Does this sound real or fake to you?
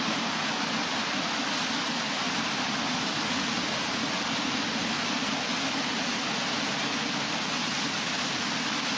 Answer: real